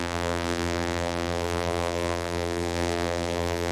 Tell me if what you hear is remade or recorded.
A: remade